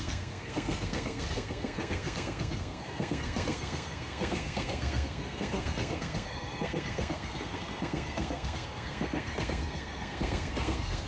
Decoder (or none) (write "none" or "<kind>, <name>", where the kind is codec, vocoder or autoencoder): codec, SNAC